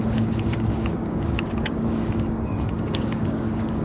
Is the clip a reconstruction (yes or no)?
yes